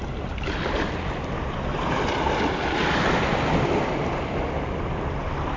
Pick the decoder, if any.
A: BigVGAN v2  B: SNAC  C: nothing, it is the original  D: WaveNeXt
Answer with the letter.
A